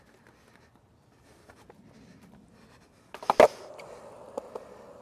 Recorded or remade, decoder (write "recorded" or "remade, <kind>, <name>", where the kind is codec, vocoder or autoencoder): recorded